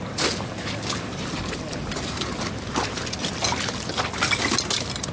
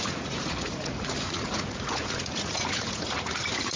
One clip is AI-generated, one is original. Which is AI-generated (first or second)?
second